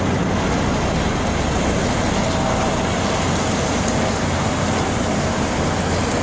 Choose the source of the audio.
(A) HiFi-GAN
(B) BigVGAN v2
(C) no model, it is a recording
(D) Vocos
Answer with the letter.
C